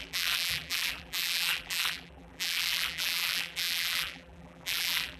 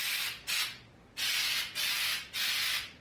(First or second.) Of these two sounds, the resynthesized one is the first